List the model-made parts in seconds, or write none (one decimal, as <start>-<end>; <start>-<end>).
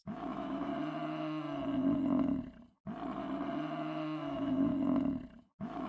0.0-0.7; 4.2-4.7; 5.4-5.9